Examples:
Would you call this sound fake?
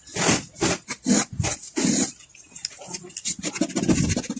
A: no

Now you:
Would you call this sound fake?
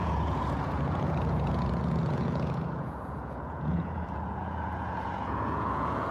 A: yes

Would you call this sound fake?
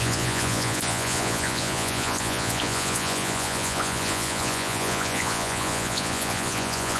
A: yes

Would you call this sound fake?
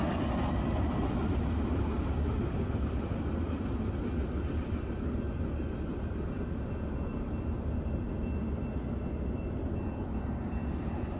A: no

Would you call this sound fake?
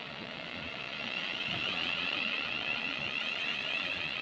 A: yes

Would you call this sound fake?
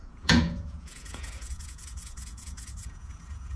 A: yes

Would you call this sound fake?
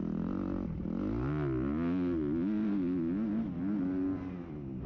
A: no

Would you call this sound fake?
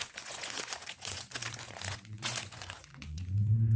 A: yes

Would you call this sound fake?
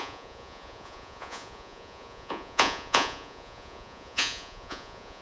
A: yes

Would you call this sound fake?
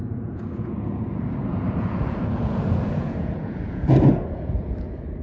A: yes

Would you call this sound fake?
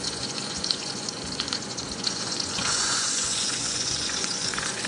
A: yes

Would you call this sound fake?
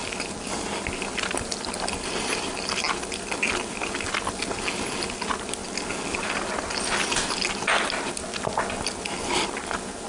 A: no